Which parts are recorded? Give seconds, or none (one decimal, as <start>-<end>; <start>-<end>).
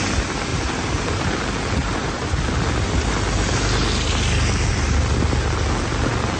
0.0-0.5; 1.3-1.8; 2.4-6.4